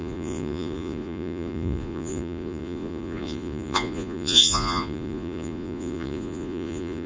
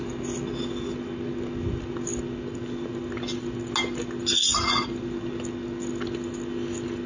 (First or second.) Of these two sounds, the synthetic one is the first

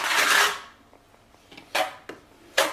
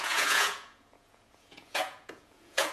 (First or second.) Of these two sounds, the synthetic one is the second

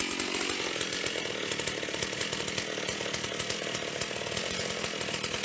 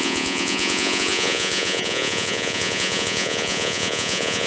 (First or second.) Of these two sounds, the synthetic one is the second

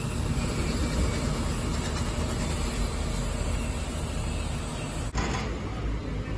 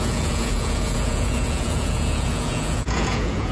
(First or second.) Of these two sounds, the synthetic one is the second